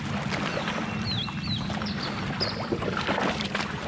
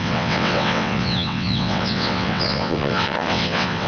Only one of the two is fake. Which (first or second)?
second